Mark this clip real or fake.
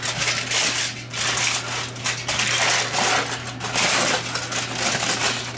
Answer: real